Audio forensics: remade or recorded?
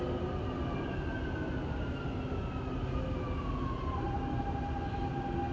recorded